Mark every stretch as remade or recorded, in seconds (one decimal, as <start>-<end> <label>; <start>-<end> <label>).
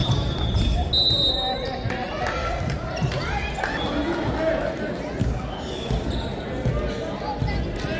0.0-5.2 recorded; 5.2-5.9 remade; 5.9-8.0 recorded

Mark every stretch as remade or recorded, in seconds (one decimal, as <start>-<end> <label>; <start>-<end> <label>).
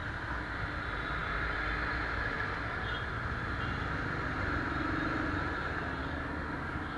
0.0-6.0 recorded; 6.0-7.0 remade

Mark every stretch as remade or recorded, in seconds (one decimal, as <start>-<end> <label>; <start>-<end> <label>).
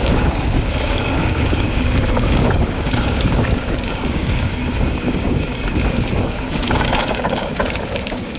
0.0-8.4 remade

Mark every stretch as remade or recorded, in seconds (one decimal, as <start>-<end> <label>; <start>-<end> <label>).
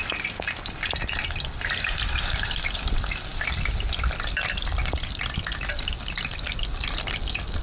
0.0-7.6 recorded